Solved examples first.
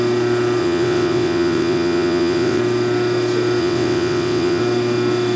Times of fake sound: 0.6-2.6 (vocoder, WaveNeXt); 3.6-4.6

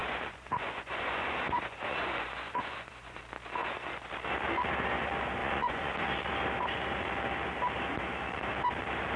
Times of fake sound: 0.0-3.2 (vocoder, Vocos); 3.6-4.1; 5.4-6.1

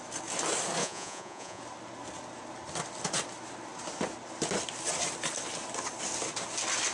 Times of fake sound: 0.8-1.6 (vocoder, Vocos)

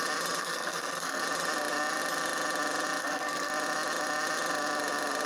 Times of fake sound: 0.4-1.2 (codec, SNAC); 3.0-3.5

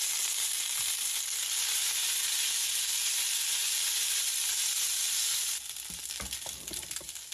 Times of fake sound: none

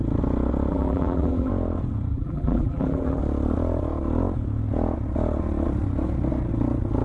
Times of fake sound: 0.7-1.5 (vocoder, BigVGAN v2); 2.1-3.2

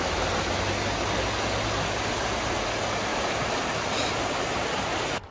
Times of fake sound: 3.1-5.3 (vocoder, BigVGAN v2)

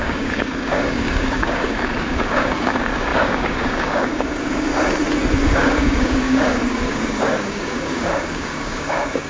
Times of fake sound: 0.0-4.7 (codec, DAC); 5.5-9.3